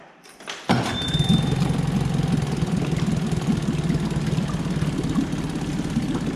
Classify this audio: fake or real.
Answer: real